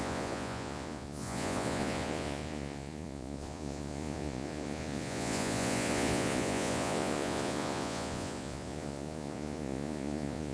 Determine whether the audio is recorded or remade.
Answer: remade